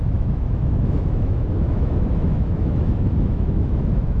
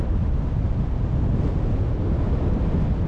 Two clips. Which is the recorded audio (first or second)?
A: second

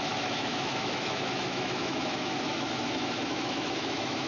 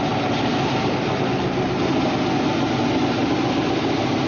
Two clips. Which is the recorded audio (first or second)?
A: second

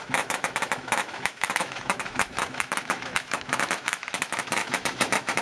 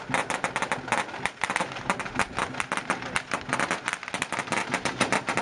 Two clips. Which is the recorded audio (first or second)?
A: second